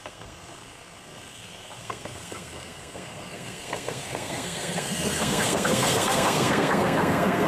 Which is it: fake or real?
fake